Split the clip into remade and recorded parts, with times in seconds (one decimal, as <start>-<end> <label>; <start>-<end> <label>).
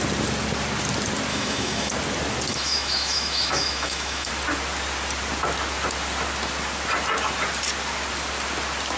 0.0-1.3 recorded; 1.3-1.9 remade; 1.9-2.5 recorded; 2.5-4.3 remade; 4.3-9.0 recorded